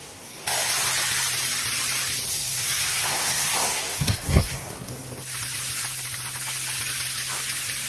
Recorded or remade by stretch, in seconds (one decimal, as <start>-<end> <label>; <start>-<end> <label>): 0.0-0.4 remade; 0.4-2.3 recorded; 2.3-4.9 remade; 4.9-7.9 recorded